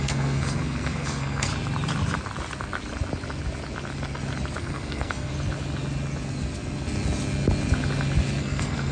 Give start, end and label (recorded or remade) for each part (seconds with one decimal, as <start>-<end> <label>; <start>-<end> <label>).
0.0-1.5 remade; 1.5-4.6 recorded; 4.6-5.3 remade; 5.3-8.4 recorded; 8.4-8.9 remade